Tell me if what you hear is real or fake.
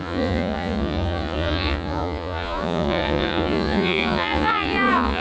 fake